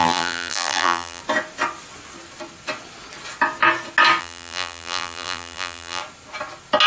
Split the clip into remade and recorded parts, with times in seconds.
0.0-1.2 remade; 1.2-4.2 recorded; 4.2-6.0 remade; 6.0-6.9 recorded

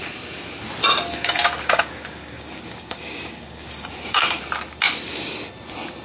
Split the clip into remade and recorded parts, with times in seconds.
0.0-1.1 recorded; 1.1-4.4 remade; 4.4-6.0 recorded